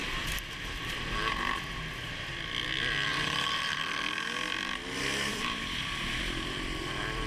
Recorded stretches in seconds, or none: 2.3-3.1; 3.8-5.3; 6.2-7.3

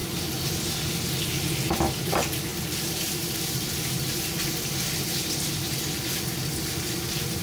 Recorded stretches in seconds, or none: 0.0-7.4